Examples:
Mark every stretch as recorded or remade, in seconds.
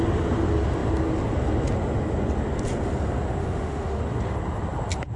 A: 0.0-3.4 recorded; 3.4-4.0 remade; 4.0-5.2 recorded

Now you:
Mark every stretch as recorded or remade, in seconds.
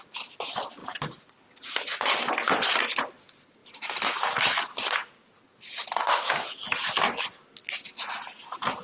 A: 0.0-8.8 recorded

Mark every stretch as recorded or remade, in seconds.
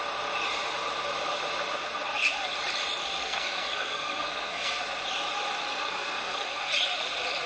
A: 0.0-3.2 recorded; 3.2-4.8 remade; 4.8-5.7 recorded; 5.7-6.7 remade; 6.7-7.5 recorded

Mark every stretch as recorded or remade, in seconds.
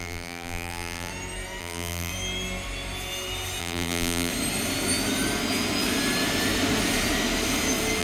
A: 0.0-1.1 remade; 1.1-1.6 recorded; 1.6-2.1 remade; 2.1-3.6 recorded; 3.6-4.3 remade; 4.3-8.0 recorded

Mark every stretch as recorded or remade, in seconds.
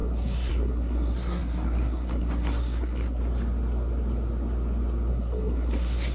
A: 0.0-3.2 remade; 3.2-5.1 recorded; 5.1-6.1 remade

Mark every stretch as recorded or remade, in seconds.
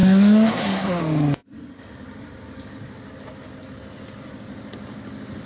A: 0.0-1.0 remade; 1.0-5.5 recorded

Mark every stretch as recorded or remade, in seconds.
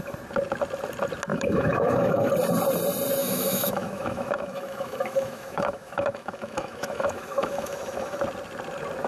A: 0.0-1.3 recorded; 1.3-2.3 remade; 2.3-3.2 recorded; 3.2-8.2 remade; 8.2-9.1 recorded